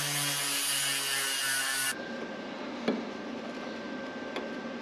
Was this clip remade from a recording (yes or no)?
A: no